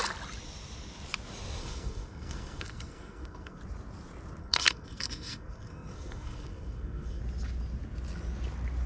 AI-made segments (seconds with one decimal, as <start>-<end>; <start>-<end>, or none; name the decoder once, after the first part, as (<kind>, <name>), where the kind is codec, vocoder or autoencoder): 1.6-3.6 (codec, SNAC); 4.4-7.2